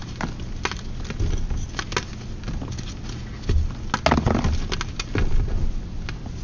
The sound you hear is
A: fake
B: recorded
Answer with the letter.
B